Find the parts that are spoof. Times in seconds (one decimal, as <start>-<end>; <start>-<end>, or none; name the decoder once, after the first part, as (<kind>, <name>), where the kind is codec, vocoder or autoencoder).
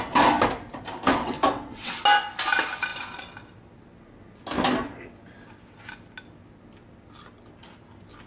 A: 1.1-2.0 (vocoder, WaveNeXt)